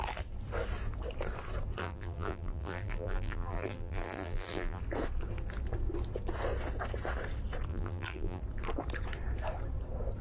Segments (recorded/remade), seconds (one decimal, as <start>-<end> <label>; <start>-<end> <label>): 0.0-1.8 recorded; 1.8-4.8 remade; 4.8-7.7 recorded; 7.7-8.4 remade; 8.4-10.2 recorded